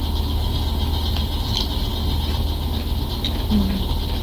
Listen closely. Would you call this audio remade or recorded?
recorded